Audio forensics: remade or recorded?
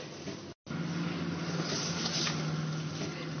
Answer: recorded